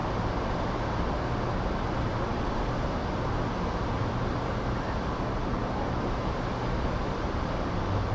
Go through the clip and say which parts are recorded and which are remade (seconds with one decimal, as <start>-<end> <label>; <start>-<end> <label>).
0.0-8.1 recorded